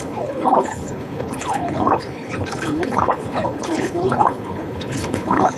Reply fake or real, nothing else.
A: fake